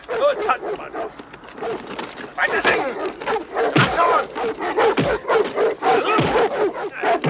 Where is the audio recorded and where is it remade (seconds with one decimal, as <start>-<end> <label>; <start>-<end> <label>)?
0.0-7.3 recorded

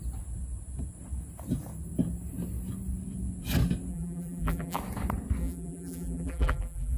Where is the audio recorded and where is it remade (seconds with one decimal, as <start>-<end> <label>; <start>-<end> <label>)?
0.0-3.9 recorded; 3.9-4.8 remade; 4.8-5.4 recorded; 5.4-7.0 remade

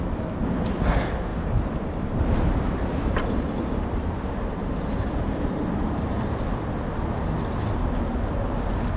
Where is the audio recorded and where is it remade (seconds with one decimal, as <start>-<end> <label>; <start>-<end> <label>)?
0.0-1.3 recorded; 1.3-6.2 remade; 6.2-9.0 recorded

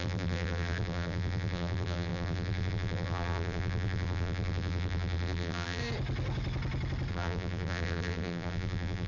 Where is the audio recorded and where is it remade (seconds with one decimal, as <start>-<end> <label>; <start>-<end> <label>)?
0.0-5.8 remade; 5.8-7.1 recorded; 7.1-9.1 remade

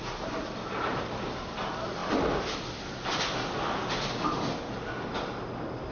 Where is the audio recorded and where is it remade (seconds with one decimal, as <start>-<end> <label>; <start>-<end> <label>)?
0.0-2.0 recorded; 2.0-2.8 remade; 2.8-5.9 recorded

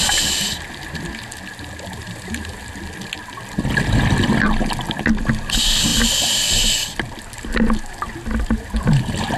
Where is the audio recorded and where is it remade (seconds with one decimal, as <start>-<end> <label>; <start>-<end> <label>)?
0.0-9.4 recorded

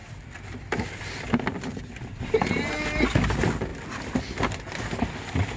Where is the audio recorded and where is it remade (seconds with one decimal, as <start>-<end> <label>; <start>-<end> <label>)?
0.0-2.7 remade; 2.7-3.7 recorded; 3.7-4.2 remade; 4.2-5.6 recorded